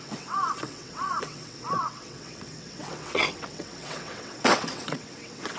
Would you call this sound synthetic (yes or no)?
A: yes